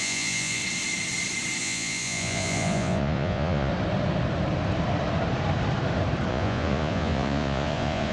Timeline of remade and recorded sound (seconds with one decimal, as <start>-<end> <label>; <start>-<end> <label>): 0.0-0.6 remade; 0.6-1.6 recorded; 1.6-3.7 remade; 3.7-6.3 recorded; 6.3-8.1 remade